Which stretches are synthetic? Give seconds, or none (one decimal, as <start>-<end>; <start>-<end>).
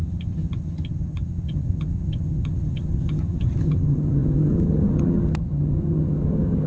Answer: 0.0-6.7